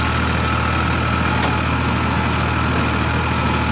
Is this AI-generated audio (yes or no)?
no